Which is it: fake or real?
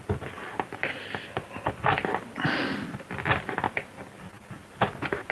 real